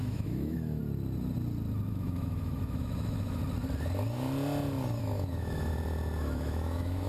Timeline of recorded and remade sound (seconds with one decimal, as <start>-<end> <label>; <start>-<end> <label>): 0.0-0.8 remade; 0.8-1.9 recorded; 1.9-3.4 remade; 3.4-5.0 recorded; 5.0-5.7 remade; 5.7-6.2 recorded; 6.2-7.1 remade